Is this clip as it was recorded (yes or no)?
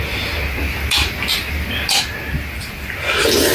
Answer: yes